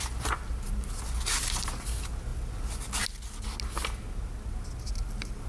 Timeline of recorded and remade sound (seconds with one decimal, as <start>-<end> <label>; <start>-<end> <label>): 0.0-5.5 recorded